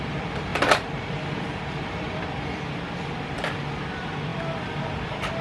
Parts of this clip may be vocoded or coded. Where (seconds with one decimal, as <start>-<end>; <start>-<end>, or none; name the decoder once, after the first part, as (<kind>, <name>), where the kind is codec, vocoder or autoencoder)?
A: 0.0-5.4 (vocoder, BigVGAN v2)